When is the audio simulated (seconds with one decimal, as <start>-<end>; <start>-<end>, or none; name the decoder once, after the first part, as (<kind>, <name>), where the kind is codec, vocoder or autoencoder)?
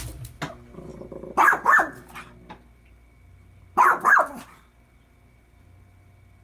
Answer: none